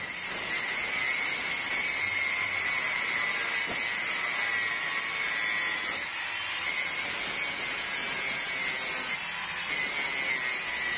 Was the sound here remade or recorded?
recorded